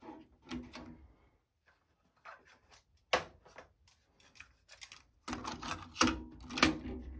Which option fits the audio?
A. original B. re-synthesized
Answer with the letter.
A